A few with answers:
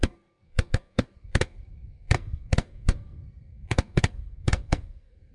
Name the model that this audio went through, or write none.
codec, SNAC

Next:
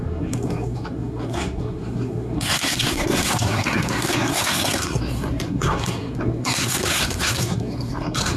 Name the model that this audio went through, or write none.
codec, SNAC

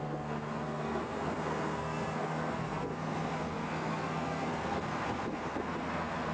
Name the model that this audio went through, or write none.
codec, SNAC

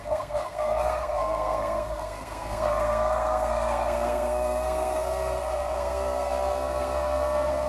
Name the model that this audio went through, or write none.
codec, SNAC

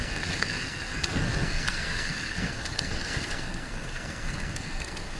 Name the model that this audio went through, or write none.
codec, SNAC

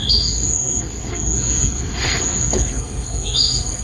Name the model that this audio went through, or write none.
codec, SNAC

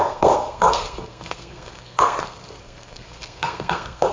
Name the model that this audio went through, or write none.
codec, SNAC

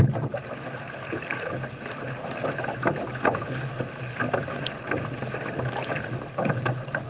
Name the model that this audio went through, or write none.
none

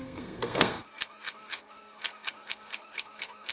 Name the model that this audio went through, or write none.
codec, SNAC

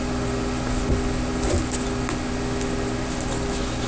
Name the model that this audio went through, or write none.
none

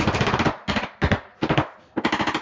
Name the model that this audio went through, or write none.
none